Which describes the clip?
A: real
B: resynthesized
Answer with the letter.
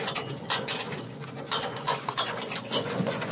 B